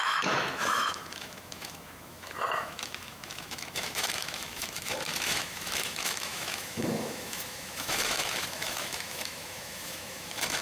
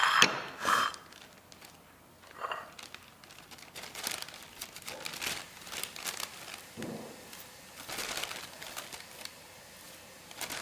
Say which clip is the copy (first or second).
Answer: first